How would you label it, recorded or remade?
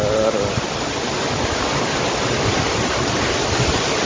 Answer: recorded